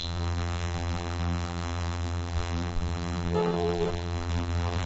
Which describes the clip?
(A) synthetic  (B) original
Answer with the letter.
A